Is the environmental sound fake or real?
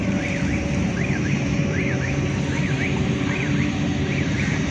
fake